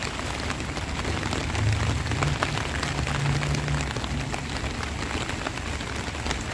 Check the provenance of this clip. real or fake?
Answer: real